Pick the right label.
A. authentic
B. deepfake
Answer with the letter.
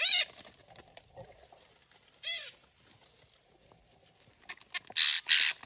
A